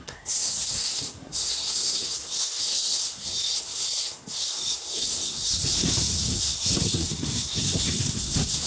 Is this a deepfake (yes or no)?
yes